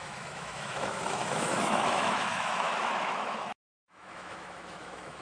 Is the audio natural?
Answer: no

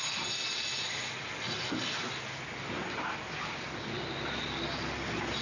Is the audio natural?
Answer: yes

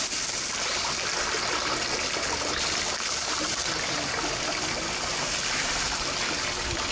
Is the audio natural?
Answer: yes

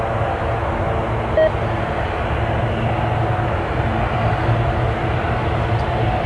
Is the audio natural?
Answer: yes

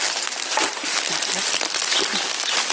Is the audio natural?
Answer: yes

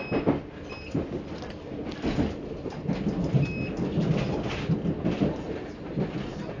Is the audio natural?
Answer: yes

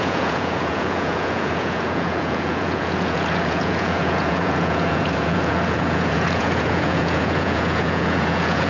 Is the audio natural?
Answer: no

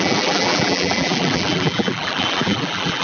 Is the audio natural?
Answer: no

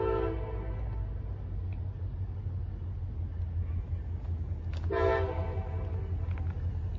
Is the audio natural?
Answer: yes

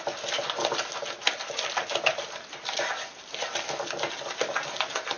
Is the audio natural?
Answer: yes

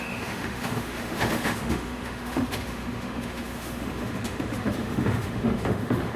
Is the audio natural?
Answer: no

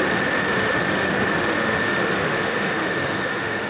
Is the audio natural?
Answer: no